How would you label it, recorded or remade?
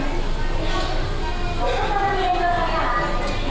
recorded